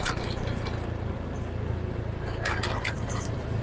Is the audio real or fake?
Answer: real